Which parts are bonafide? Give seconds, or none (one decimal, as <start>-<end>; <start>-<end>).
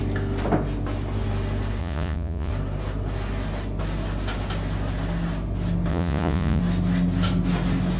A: 0.0-1.8; 2.5-5.9; 6.6-8.0